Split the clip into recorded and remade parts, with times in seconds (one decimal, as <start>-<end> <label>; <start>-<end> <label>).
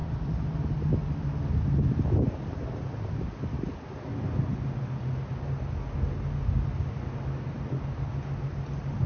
0.0-9.1 recorded